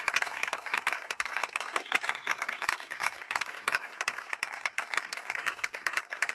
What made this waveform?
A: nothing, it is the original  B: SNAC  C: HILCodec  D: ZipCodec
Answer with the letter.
B